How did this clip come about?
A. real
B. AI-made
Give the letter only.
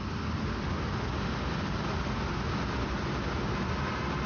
A